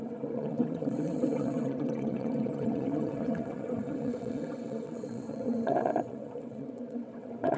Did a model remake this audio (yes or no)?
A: yes